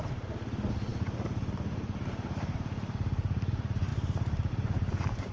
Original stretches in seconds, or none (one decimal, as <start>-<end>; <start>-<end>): none